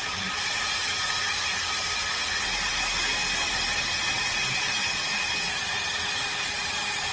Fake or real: real